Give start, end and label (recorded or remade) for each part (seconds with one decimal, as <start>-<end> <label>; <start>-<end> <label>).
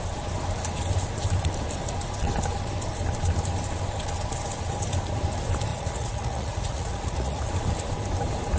0.0-5.7 recorded; 5.7-7.5 remade; 7.5-8.6 recorded